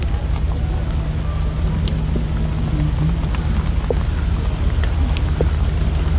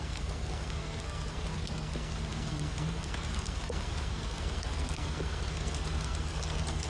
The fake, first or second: second